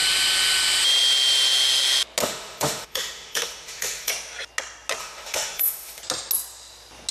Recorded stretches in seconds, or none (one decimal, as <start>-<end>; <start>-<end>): 0.0-2.2; 4.1-5.0; 6.0-7.1